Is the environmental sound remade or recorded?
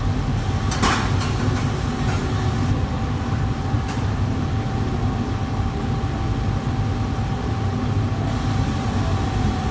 recorded